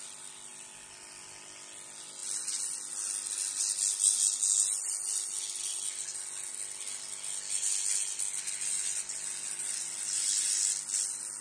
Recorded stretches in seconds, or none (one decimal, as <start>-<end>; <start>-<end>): 0.0-11.4